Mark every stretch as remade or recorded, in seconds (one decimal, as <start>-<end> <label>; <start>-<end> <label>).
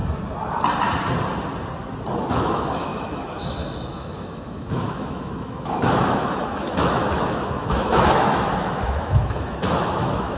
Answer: 0.0-2.4 recorded; 2.4-10.4 remade